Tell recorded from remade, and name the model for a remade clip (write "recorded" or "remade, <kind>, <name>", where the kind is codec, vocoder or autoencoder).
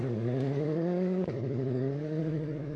remade, codec, DAC